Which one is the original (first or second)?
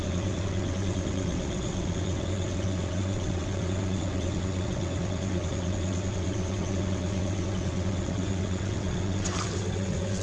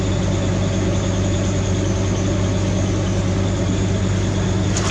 second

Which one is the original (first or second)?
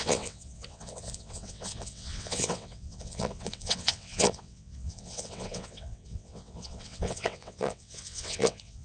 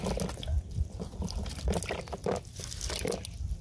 second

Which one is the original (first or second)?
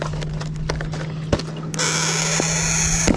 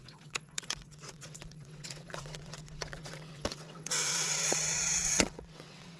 first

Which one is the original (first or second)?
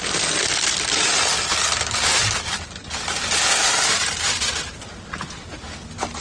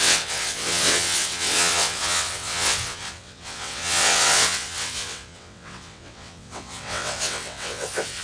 first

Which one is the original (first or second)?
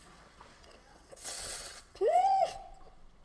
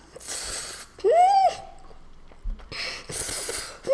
second